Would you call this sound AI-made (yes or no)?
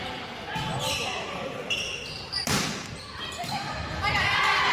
no